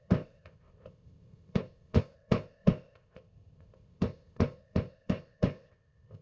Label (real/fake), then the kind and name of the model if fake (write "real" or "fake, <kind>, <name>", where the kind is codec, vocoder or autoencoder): fake, codec, ZipCodec